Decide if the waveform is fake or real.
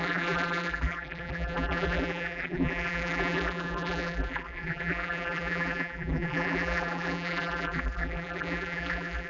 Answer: fake